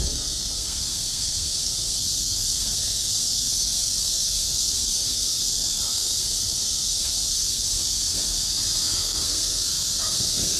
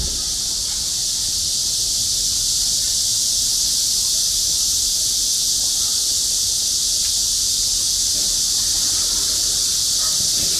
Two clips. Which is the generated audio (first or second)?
first